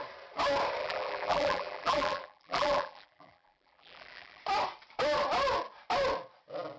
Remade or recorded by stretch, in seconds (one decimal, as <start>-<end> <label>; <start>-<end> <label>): 0.0-0.8 recorded; 0.8-4.4 remade; 4.4-6.8 recorded